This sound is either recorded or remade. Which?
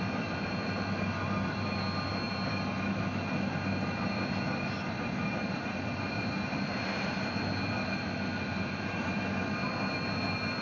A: recorded